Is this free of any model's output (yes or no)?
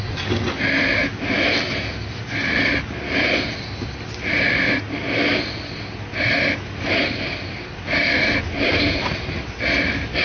yes